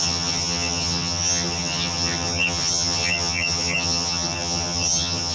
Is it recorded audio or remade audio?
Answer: remade